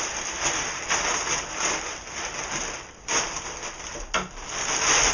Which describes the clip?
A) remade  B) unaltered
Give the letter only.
B